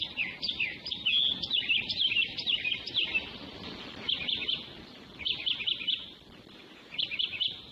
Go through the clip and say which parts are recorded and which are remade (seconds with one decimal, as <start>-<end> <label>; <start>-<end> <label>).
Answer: 0.0-7.7 recorded